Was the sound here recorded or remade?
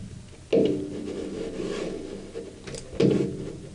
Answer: recorded